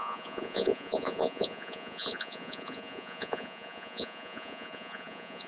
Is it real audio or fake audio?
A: fake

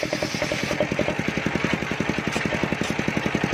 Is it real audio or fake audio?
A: real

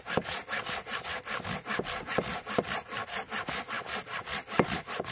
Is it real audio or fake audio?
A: real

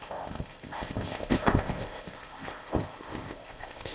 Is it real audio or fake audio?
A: fake